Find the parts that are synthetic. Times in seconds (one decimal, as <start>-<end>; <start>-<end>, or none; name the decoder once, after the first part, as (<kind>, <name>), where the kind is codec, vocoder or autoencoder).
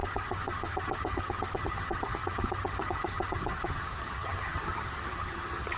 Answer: 0.0-5.8 (vocoder, HiFi-GAN)